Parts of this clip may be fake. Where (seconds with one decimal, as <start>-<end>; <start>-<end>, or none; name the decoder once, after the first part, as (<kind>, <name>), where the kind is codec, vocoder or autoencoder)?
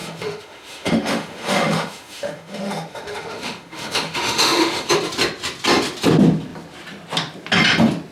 0.0-4.9 (autoencoder, DAC-VAE)